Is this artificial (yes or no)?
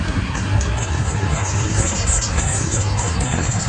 yes